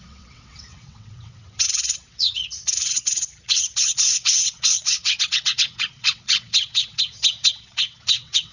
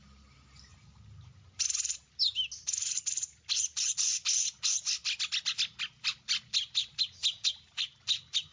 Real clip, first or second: second